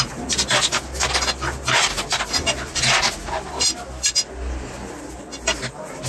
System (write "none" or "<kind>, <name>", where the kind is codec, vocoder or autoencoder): none